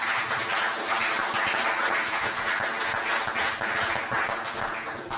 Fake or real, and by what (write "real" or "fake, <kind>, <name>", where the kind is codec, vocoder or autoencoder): real